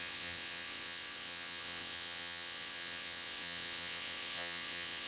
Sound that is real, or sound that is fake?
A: fake